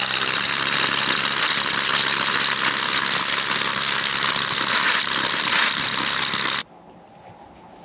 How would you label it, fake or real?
real